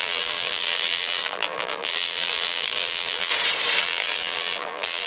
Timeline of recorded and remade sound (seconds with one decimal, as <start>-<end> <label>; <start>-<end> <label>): 0.0-3.3 remade; 3.3-3.8 recorded; 3.8-5.1 remade